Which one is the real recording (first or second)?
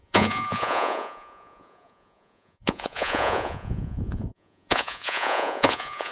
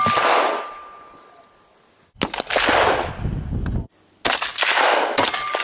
second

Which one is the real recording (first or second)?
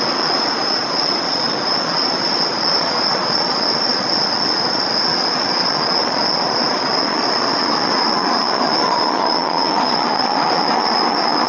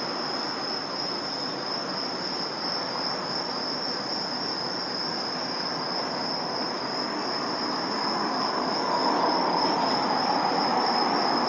second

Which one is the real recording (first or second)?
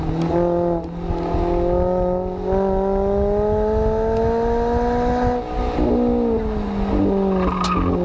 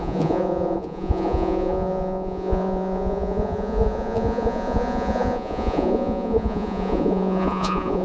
first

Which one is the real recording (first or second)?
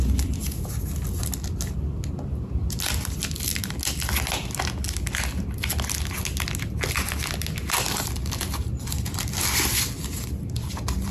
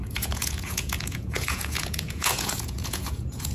first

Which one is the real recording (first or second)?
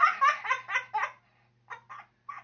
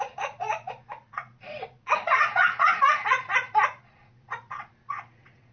first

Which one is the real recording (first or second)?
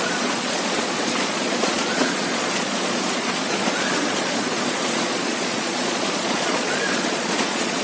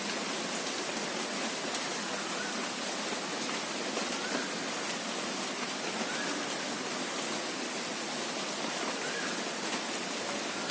second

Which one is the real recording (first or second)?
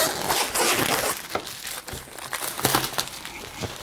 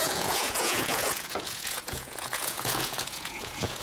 first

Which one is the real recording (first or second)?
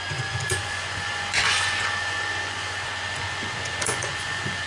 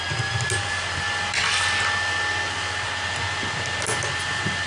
second